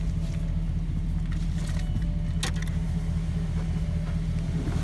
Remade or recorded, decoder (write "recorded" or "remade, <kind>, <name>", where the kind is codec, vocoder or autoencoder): recorded